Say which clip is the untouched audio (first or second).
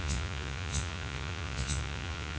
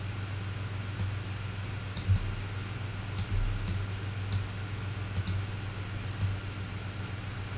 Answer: second